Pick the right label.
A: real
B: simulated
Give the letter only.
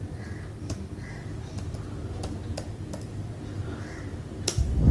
A